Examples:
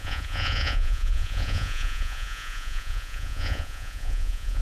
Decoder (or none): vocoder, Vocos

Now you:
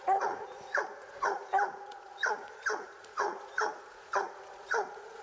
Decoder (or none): vocoder, Vocos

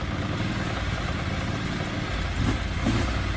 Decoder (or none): none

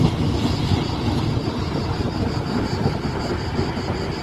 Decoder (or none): none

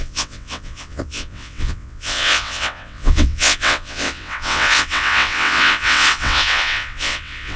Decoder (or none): vocoder, WaveNeXt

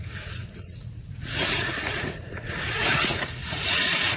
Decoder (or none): vocoder, Vocos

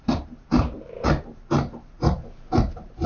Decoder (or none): vocoder, BigVGAN v2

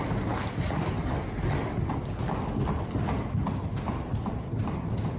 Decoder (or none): none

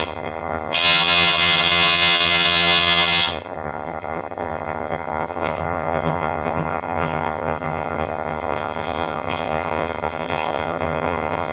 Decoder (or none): vocoder, HiFi-GAN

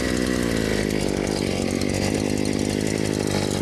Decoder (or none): none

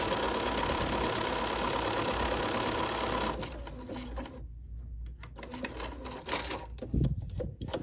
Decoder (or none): none